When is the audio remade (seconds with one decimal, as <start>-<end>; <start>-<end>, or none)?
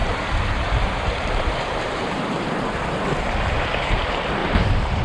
0.0-3.0; 4.4-5.0